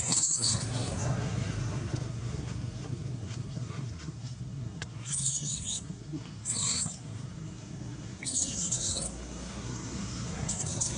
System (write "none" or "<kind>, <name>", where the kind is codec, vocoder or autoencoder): codec, SNAC